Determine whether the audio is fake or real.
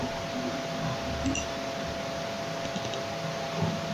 real